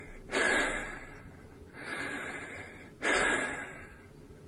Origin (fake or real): real